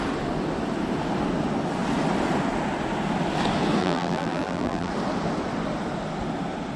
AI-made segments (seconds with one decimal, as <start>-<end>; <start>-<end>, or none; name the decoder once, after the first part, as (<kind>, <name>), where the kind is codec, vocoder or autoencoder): 3.8-4.9 (vocoder, BigVGAN v2)